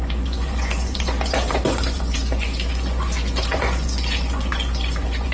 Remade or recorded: remade